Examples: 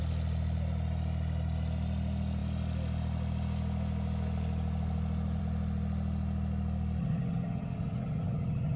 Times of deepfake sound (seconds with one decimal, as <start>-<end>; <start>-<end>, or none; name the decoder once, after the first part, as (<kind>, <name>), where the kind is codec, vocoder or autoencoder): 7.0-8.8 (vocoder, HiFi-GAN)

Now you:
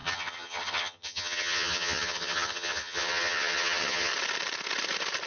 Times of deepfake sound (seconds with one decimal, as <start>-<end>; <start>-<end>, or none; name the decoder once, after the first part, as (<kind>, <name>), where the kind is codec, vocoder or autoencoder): 0.0-4.1 (vocoder, HiFi-GAN)

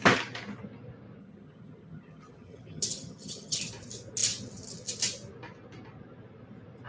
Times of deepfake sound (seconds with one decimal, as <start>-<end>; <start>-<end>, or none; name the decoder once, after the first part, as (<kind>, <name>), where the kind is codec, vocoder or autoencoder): 1.2-3.6 (vocoder, HiFi-GAN)

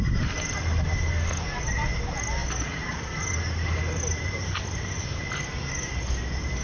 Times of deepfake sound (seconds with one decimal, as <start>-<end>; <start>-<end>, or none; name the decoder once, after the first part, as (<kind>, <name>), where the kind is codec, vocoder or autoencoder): none

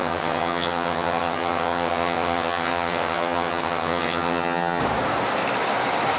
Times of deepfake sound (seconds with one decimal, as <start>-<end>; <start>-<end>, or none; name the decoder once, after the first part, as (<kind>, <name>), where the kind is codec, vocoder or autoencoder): 0.0-4.8 (vocoder, HiFi-GAN)

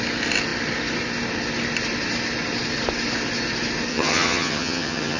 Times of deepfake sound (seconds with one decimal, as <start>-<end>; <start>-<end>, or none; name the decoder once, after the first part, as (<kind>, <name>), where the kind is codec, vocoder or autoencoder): 3.9-5.2 (vocoder, HiFi-GAN)

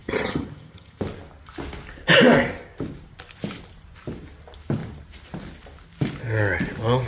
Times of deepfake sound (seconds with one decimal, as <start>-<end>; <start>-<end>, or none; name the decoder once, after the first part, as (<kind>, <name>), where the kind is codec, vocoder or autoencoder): 0.0-1.0 (vocoder, HiFi-GAN)

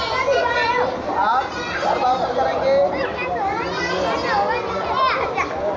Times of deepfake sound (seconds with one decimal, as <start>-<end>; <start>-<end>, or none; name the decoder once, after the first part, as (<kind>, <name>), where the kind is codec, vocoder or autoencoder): none